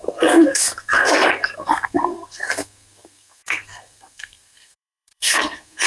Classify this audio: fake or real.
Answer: fake